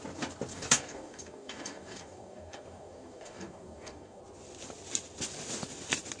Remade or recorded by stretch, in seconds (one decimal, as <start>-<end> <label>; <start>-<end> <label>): 0.0-0.5 recorded; 0.5-4.2 remade; 4.2-6.2 recorded